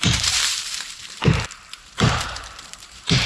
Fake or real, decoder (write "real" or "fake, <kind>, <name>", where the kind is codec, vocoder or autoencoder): fake, vocoder, BigVGAN v2